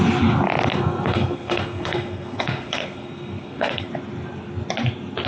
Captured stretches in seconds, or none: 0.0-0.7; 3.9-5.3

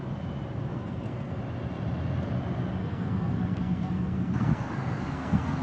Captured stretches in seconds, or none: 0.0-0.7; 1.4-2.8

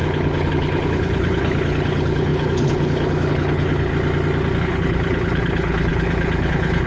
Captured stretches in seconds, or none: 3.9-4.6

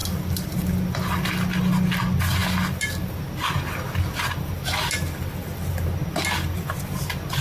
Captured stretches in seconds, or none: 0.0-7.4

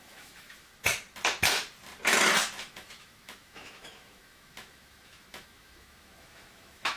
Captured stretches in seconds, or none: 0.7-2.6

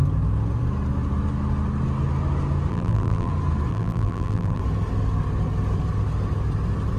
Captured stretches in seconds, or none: 0.0-2.7; 3.3-3.7; 4.6-7.0